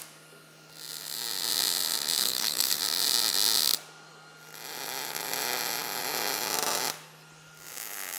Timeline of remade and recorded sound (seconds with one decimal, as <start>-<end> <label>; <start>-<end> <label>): 0.0-2.2 recorded; 2.2-2.8 remade; 2.8-8.2 recorded